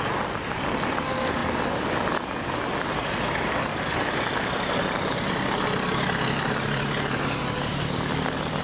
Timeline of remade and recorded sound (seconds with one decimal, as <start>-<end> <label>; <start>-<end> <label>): 0.0-8.6 recorded

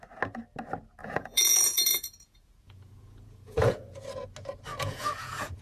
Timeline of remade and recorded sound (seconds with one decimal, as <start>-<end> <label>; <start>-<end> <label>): 0.0-1.0 recorded; 1.0-4.0 remade; 4.0-4.7 recorded; 4.7-5.6 remade

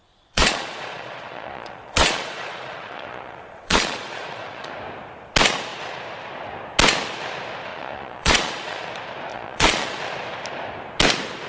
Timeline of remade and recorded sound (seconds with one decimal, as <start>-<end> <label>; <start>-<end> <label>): 0.0-4.7 remade; 4.7-7.7 recorded; 7.7-8.9 remade; 8.9-9.3 recorded; 9.3-10.0 remade; 10.0-11.5 recorded

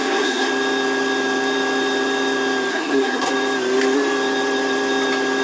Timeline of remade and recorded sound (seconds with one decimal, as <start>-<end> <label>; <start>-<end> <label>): 0.0-0.5 remade; 0.5-2.7 recorded; 2.7-3.3 remade; 3.3-5.4 recorded

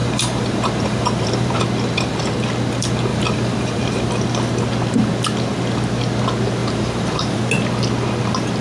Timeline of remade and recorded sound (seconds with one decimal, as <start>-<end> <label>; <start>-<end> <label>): 0.0-1.6 remade; 1.6-3.1 recorded; 3.1-4.1 remade; 4.1-6.6 recorded; 6.6-7.4 remade; 7.4-8.6 recorded

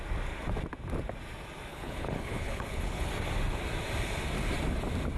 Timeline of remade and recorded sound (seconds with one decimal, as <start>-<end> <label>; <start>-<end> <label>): 0.0-1.7 recorded; 1.7-3.1 remade; 3.1-5.2 recorded

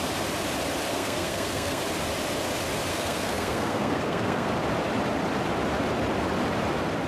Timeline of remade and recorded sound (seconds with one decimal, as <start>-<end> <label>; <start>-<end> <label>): 0.0-0.9 recorded; 0.9-1.8 remade; 1.8-2.9 recorded; 2.9-4.5 remade; 4.5-7.1 recorded

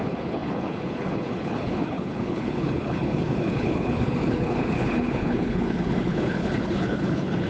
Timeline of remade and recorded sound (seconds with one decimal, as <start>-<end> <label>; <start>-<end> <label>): 0.0-7.5 remade